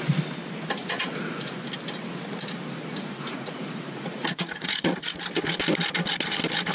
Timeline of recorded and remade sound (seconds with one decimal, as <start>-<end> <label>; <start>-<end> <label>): 0.0-0.8 recorded; 0.8-1.6 remade; 1.6-2.8 recorded; 2.8-5.2 remade; 5.2-6.7 recorded

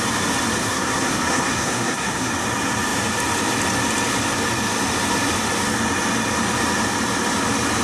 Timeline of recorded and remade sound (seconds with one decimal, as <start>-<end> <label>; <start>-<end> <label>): 0.0-0.6 recorded; 0.6-2.3 remade; 2.3-7.8 recorded